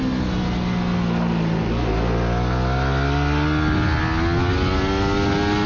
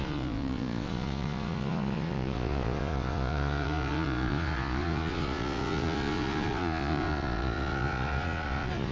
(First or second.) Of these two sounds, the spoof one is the second